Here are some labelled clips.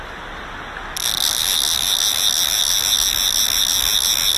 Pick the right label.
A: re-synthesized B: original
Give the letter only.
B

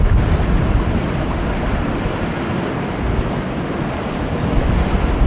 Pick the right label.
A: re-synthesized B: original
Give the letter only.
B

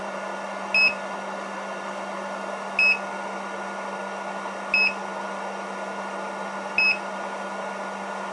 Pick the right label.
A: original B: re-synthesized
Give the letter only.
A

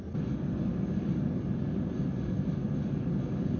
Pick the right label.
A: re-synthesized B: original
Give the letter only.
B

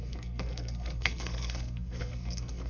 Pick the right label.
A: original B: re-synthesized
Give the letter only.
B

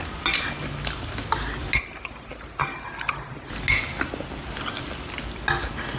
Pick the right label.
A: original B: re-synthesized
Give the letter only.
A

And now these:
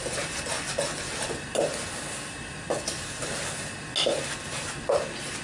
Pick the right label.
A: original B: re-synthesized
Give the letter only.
A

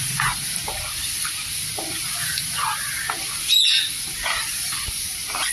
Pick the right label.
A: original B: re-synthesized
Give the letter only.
A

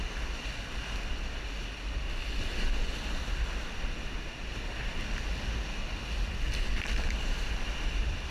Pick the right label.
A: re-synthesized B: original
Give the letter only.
B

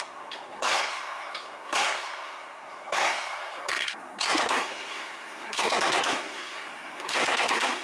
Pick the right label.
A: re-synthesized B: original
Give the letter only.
A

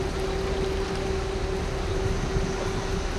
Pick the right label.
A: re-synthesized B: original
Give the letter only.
B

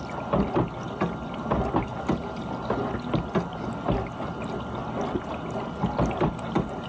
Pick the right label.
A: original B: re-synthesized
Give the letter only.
A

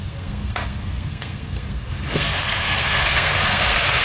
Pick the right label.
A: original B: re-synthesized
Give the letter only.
B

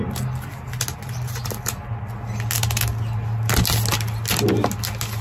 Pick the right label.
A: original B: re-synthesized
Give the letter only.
A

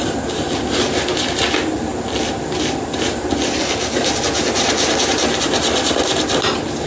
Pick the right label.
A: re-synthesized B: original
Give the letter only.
B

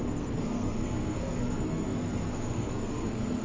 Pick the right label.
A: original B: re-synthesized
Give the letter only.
B